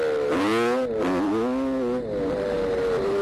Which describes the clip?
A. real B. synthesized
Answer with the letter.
A